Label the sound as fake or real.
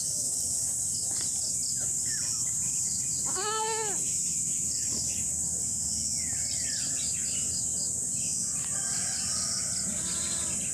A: real